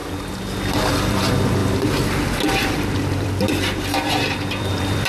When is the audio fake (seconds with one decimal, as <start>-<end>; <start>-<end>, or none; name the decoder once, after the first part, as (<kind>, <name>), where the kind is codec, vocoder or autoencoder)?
0.9-5.1 (vocoder, BigVGAN v2)